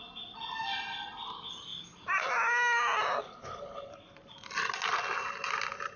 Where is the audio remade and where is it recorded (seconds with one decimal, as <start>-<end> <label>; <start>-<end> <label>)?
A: 0.0-3.2 recorded; 3.2-3.9 remade; 3.9-6.0 recorded